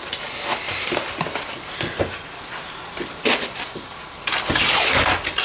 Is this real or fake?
real